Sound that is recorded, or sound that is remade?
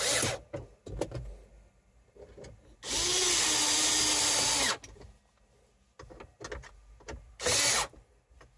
recorded